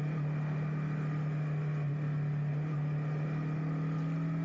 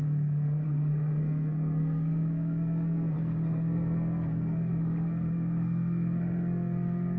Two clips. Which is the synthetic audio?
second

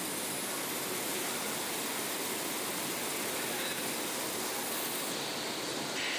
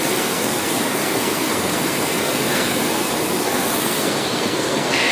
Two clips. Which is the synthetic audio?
second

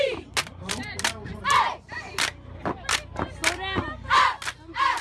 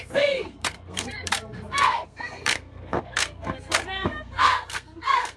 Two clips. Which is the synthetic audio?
second